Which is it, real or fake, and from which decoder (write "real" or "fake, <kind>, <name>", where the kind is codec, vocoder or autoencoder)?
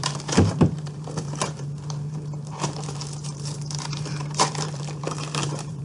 fake, vocoder, BigVGAN v2